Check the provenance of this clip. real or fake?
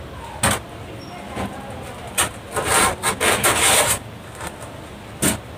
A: real